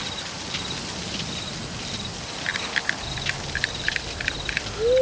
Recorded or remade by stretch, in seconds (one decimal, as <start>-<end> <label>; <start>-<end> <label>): 0.0-5.0 recorded